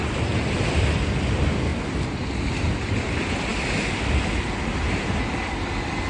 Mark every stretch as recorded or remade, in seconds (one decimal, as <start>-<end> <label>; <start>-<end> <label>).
0.0-6.1 recorded